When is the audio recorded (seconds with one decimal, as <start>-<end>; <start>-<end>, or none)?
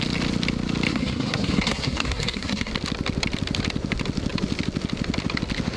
0.0-0.9; 2.7-5.8